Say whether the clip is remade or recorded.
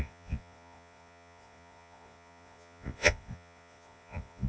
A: remade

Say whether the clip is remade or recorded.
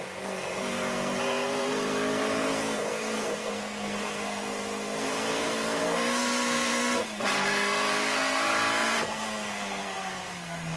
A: remade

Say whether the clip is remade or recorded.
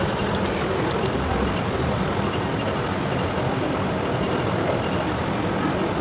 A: recorded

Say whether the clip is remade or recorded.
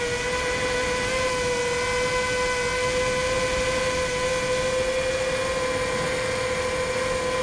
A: recorded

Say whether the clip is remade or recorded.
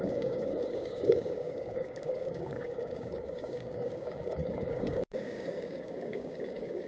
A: remade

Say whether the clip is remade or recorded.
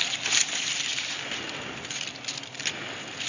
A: recorded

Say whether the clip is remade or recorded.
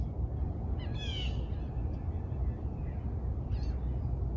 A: recorded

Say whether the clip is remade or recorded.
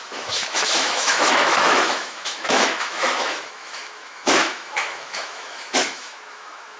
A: remade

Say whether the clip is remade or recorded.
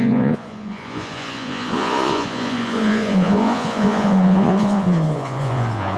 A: remade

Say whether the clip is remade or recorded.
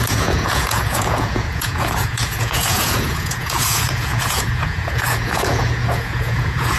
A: remade